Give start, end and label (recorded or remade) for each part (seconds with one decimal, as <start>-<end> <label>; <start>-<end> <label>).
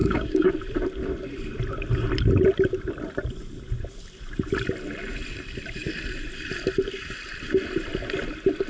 0.0-0.5 remade; 0.5-8.7 recorded